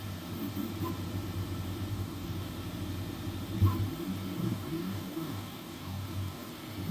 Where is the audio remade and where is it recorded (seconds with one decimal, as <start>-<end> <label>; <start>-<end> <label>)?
0.0-1.9 recorded; 1.9-2.5 remade; 2.5-4.4 recorded; 4.4-6.5 remade; 6.5-6.9 recorded